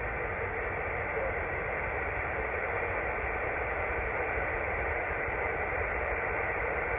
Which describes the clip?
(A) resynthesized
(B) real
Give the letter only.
A